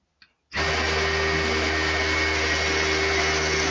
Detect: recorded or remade recorded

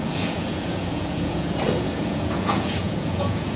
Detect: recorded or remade remade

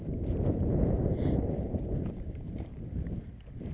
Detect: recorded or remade remade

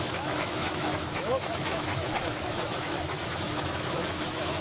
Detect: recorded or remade remade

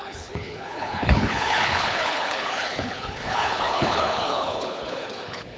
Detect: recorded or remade remade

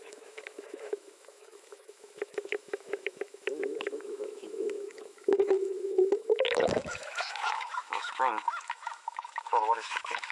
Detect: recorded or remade remade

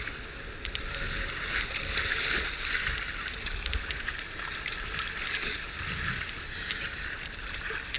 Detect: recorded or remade recorded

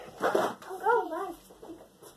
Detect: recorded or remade recorded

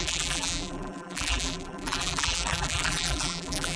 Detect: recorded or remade remade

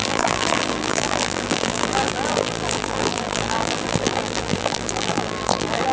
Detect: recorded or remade remade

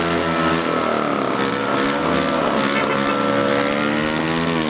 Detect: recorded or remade recorded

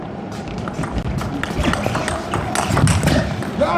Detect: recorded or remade recorded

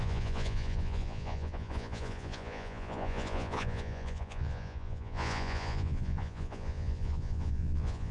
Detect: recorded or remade remade